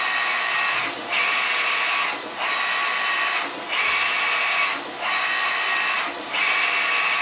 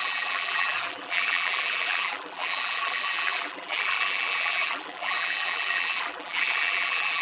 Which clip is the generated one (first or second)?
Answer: second